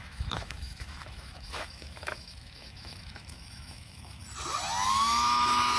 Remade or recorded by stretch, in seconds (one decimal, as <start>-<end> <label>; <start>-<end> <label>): 0.0-4.2 remade; 4.2-4.9 recorded; 4.9-5.8 remade